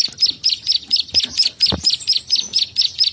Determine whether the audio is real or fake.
real